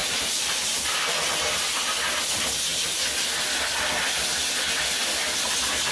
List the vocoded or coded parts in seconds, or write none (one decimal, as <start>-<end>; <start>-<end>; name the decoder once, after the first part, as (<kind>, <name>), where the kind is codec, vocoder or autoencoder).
0.0-1.0 (vocoder, BigVGAN v2)